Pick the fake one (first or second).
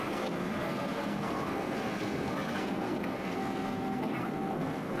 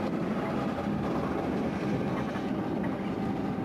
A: first